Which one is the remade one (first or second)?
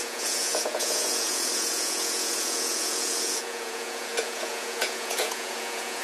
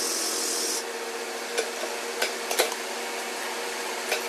first